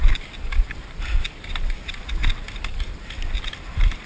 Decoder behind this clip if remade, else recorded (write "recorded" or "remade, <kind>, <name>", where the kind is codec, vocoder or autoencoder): recorded